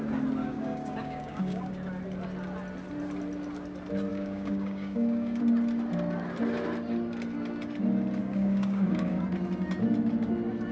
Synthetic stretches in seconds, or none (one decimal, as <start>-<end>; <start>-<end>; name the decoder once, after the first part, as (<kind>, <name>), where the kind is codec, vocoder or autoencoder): 0.4-1.7 (codec, DAC); 4.1-5.4; 8.2-9.2